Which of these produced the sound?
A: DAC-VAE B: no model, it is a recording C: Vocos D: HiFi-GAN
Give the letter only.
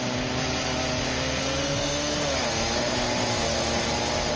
B